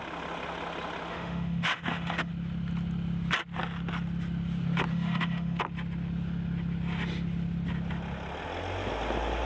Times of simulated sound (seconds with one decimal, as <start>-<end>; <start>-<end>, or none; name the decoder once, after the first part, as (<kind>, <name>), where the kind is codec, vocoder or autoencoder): 1.1-2.3 (autoencoder, DAC-VAE); 4.9-5.6